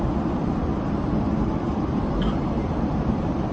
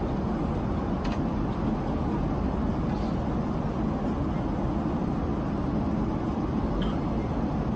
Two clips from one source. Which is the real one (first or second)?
second